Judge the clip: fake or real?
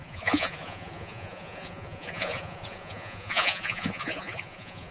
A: fake